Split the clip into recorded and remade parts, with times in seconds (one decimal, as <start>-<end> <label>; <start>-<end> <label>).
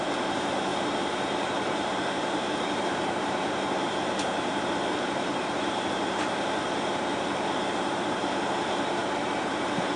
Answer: 0.0-10.0 remade